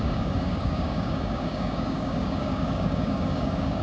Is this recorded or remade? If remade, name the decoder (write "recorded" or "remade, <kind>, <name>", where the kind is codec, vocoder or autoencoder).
remade, codec, DAC